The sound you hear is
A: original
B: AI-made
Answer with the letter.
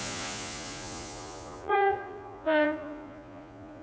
B